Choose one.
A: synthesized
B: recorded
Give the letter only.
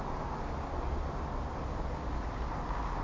B